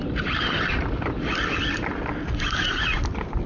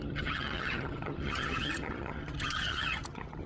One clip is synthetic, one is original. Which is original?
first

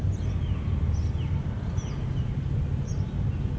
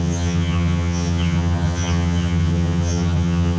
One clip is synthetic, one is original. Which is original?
first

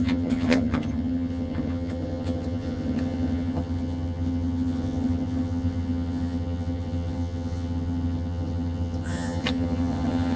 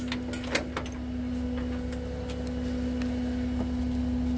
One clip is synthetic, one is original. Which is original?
second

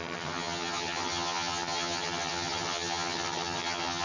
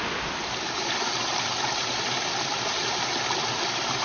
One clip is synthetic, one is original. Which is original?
second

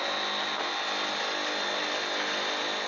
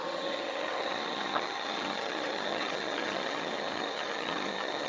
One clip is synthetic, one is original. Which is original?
first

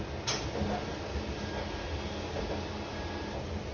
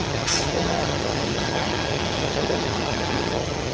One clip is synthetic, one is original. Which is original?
first